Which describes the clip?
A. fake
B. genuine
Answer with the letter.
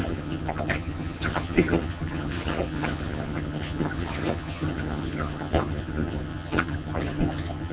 A